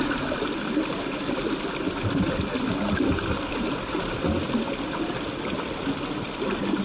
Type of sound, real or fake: real